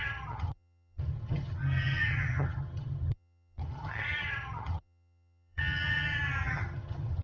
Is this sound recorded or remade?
remade